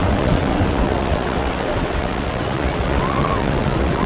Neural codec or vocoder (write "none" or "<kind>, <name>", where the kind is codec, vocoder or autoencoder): vocoder, WaveNeXt